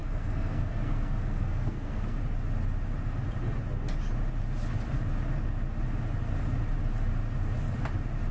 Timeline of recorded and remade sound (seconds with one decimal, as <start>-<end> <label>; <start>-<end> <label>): 0.0-2.2 remade; 2.2-8.3 recorded